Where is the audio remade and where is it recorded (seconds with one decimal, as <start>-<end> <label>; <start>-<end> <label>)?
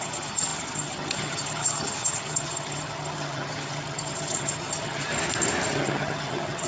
0.0-5.1 remade; 5.1-5.7 recorded; 5.7-6.7 remade